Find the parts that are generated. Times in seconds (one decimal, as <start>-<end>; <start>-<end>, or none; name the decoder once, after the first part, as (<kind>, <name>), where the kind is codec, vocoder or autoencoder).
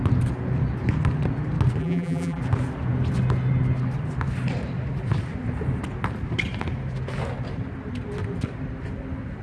1.8-2.4 (vocoder, BigVGAN v2)